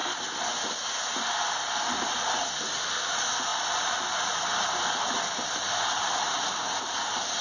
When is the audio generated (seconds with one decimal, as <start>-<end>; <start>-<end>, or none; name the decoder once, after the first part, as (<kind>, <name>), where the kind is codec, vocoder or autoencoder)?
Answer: none